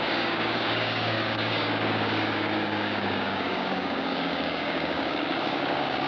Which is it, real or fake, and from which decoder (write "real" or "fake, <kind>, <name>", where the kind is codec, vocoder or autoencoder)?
fake, codec, DAC